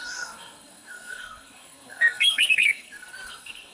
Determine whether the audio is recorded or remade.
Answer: remade